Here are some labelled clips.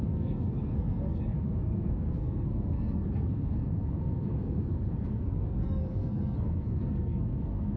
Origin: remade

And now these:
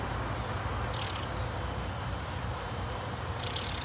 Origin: recorded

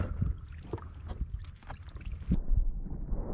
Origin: recorded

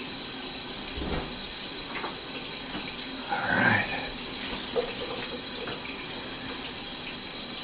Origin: recorded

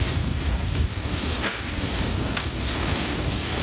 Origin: remade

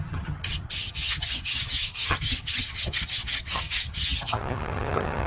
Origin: remade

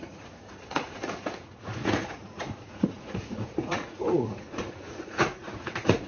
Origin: remade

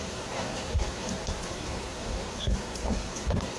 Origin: remade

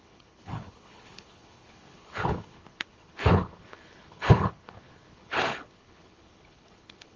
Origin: remade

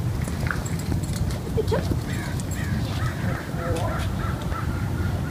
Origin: remade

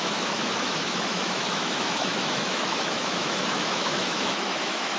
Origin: remade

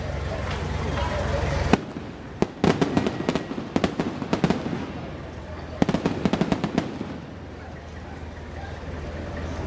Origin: recorded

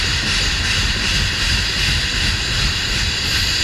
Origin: remade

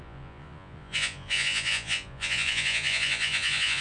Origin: remade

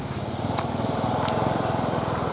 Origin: recorded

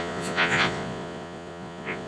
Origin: remade